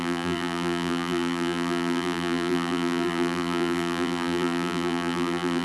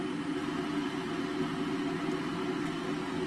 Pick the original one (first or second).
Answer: second